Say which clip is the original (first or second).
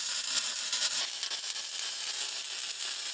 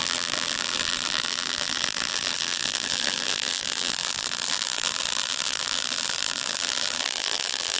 first